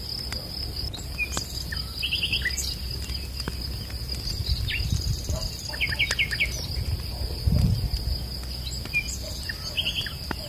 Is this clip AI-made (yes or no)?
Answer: no